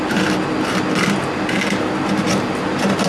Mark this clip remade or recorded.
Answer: recorded